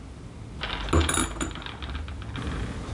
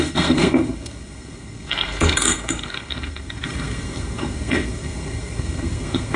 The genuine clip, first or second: first